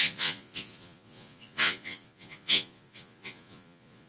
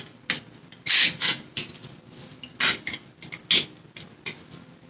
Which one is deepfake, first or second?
first